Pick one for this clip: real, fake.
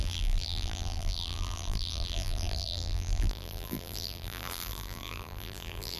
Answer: fake